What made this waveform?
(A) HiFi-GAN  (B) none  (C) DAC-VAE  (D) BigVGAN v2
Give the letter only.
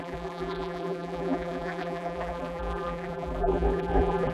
D